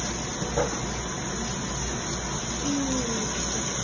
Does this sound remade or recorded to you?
recorded